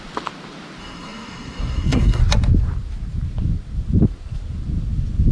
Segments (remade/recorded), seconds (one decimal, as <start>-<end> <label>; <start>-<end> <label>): 0.0-0.8 recorded; 0.8-2.2 remade; 2.2-5.3 recorded